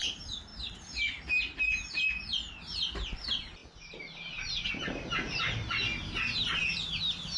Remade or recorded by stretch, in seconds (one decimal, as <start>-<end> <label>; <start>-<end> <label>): 0.0-7.4 recorded